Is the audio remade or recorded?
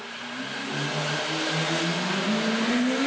recorded